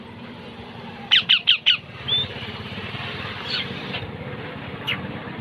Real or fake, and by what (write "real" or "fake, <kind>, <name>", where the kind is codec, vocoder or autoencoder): fake, vocoder, BigVGAN v2